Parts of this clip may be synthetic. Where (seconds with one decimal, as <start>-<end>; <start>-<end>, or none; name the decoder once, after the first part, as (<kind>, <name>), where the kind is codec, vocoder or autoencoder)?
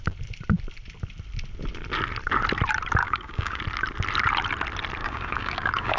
3.0-3.6 (codec, DAC); 5.0-6.0